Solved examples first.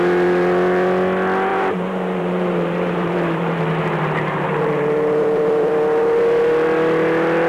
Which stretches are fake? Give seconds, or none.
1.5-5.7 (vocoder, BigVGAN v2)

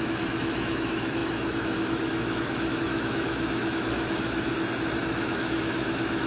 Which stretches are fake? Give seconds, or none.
0.0-4.5 (autoencoder, DAC-VAE); 5.0-6.3

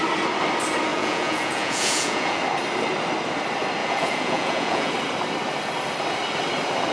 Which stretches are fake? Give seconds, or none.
0.9-2.4 (vocoder, Vocos); 3.8-4.9

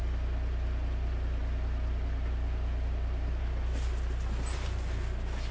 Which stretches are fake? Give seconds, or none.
none